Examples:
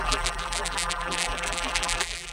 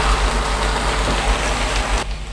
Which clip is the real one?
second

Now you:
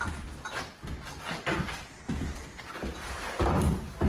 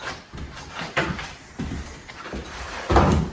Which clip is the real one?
first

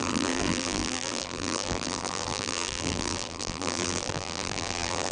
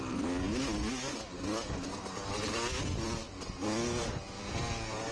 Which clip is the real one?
second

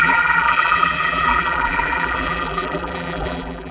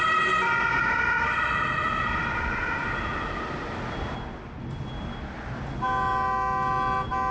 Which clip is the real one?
second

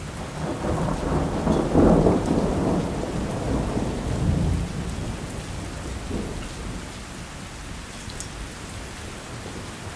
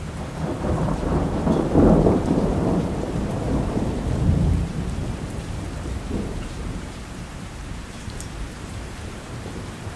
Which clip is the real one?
first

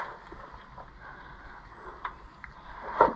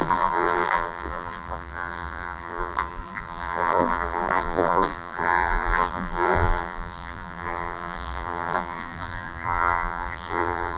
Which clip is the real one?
first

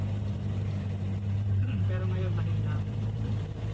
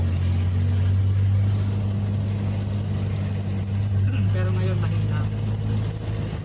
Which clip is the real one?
second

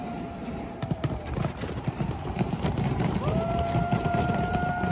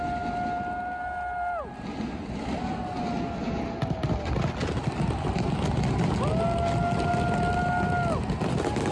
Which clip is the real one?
second